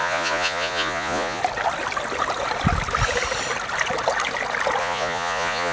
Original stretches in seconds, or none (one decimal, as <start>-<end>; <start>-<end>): 1.4-4.8